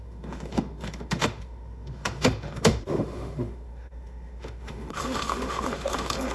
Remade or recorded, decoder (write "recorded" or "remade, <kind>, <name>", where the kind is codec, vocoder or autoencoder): remade, autoencoder, DAC-VAE